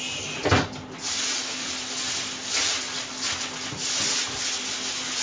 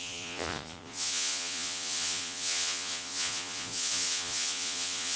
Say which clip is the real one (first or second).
first